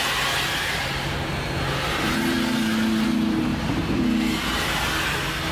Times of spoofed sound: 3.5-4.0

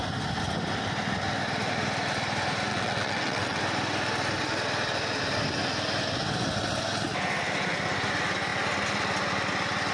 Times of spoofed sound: 2.7-3.6

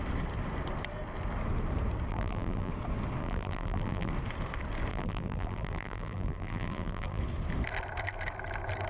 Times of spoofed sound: 2.1-2.7; 3.2-4.1; 4.9-7.2

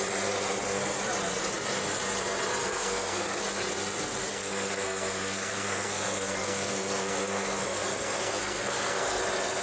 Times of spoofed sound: 2.6-3.4; 4.3-9.2

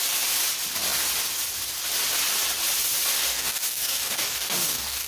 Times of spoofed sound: 3.3-5.1